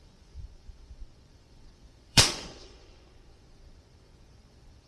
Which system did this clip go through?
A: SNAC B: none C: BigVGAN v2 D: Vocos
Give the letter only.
D